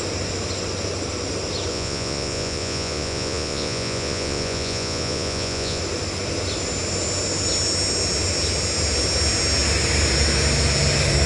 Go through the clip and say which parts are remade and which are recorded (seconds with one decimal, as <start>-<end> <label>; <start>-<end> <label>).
0.0-1.7 recorded; 1.7-5.8 remade; 5.8-11.3 recorded